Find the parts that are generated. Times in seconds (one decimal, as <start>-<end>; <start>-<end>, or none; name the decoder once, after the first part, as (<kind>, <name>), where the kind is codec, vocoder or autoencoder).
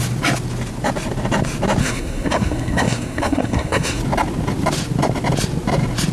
1.8-4.0 (codec, SNAC)